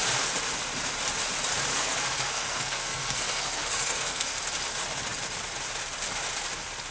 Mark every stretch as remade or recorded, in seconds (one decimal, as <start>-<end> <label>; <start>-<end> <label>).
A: 0.0-1.7 recorded; 1.7-4.4 remade; 4.4-6.9 recorded

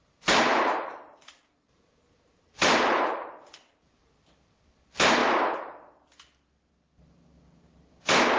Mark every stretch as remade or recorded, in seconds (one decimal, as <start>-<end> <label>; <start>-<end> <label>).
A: 0.0-5.2 remade; 5.2-8.4 recorded